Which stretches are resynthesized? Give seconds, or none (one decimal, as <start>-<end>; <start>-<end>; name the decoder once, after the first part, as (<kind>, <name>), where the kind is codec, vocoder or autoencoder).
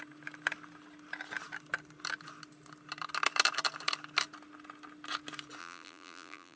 5.6-6.6 (vocoder, BigVGAN v2)